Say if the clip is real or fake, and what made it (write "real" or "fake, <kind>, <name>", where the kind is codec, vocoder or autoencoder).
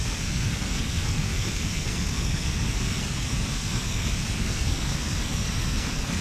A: fake, codec, SNAC